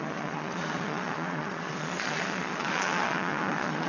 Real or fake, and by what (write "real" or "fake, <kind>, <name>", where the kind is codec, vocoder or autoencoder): fake, vocoder, Vocos